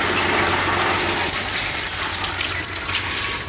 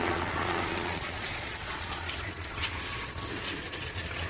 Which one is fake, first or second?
second